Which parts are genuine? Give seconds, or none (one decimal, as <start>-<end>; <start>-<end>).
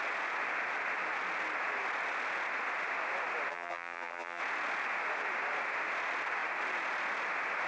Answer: 0.0-3.5; 4.4-7.7